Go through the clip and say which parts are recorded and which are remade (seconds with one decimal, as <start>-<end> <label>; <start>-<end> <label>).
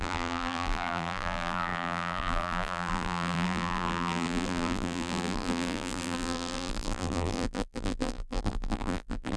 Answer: 0.0-9.4 remade